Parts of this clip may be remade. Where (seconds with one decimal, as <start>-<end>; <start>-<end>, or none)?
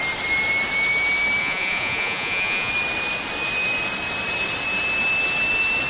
1.4-2.7